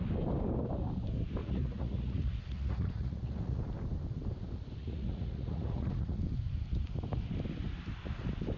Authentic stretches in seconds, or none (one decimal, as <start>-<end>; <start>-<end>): 0.0-1.4; 3.6-4.8; 6.2-8.6